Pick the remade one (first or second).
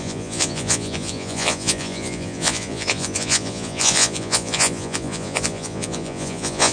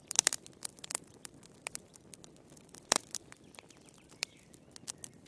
first